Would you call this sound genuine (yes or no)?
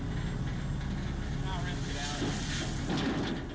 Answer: yes